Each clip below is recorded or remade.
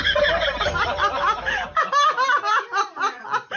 remade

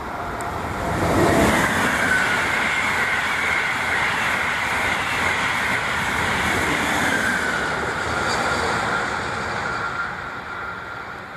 remade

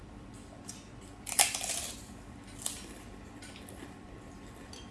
remade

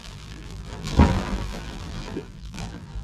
remade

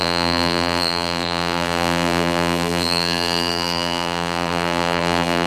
remade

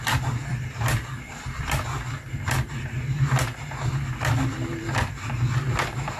remade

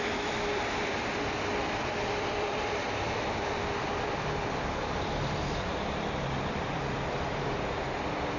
remade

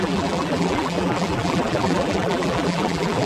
remade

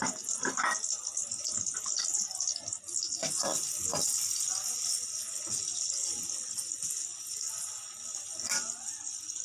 recorded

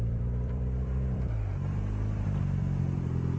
remade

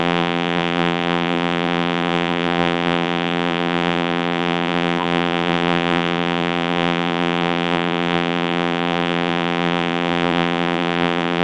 remade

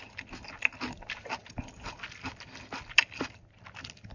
recorded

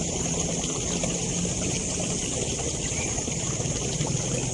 recorded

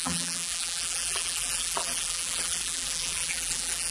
remade